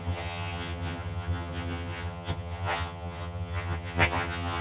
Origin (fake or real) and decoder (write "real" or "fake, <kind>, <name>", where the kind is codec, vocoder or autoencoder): fake, vocoder, HiFi-GAN